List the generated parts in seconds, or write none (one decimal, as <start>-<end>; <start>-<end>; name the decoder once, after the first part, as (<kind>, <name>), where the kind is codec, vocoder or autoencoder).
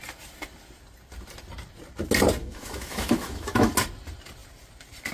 2.4-3.7 (autoencoder, DAC-VAE)